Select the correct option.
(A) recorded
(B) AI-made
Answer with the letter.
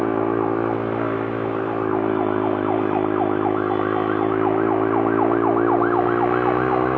A